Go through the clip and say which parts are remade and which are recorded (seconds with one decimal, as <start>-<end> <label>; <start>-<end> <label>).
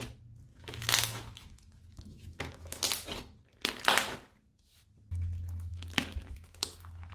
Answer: 0.0-0.5 recorded; 0.5-2.8 remade; 2.8-5.7 recorded; 5.7-7.1 remade